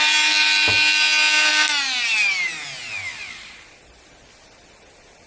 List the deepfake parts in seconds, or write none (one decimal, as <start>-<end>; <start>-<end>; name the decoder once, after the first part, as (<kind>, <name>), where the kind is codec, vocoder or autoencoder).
none